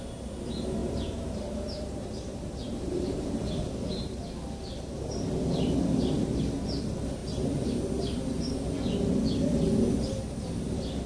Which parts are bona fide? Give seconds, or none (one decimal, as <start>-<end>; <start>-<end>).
0.0-0.8; 4.3-11.1